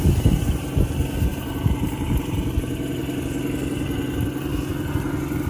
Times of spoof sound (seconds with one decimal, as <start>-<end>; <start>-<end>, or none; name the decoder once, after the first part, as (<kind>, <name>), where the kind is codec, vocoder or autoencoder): 1.3-2.5 (vocoder, BigVGAN v2)